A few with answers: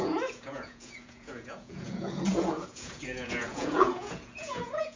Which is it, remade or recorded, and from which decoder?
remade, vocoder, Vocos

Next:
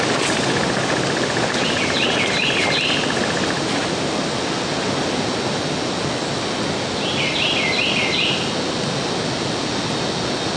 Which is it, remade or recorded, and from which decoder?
recorded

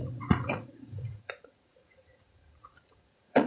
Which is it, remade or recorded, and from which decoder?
remade, vocoder, Vocos